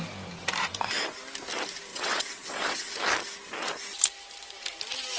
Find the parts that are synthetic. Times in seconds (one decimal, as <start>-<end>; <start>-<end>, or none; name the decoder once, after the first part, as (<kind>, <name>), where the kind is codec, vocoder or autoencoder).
1.9-2.9 (vocoder, WaveNeXt)